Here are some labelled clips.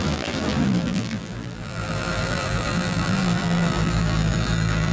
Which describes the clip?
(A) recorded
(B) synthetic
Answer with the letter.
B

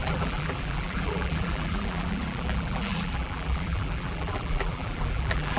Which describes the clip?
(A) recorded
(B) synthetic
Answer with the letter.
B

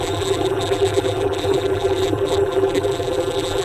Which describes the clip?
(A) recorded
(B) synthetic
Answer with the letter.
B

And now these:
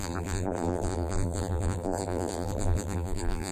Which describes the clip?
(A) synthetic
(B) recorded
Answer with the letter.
A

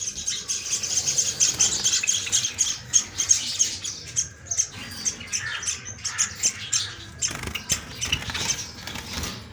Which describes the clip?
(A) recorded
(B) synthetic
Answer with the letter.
A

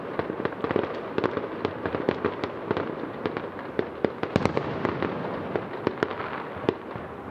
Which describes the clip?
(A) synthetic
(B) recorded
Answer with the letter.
B